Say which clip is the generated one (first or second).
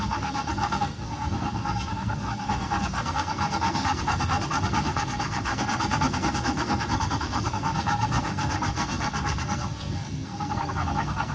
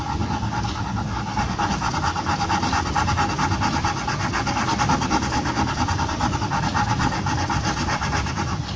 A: first